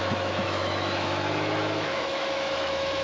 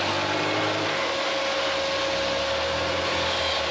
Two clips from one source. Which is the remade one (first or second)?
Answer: first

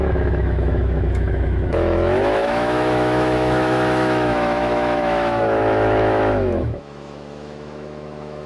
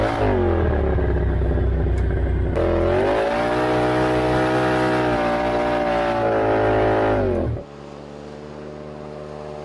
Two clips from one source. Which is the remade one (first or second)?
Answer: first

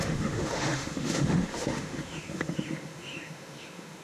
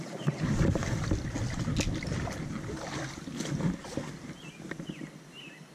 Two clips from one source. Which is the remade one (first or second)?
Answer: first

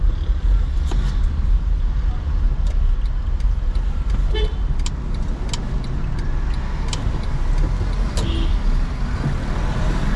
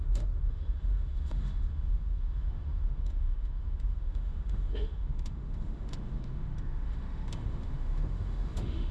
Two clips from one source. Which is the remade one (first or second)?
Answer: second